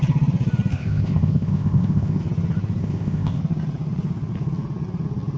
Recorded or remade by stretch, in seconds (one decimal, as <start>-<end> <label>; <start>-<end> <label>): 0.0-0.7 recorded; 0.7-2.2 remade; 2.2-2.8 recorded; 2.8-3.4 remade; 3.4-5.4 recorded